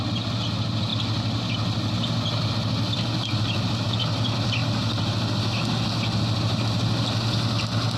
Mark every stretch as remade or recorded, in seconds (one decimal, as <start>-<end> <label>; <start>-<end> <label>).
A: 0.0-8.0 recorded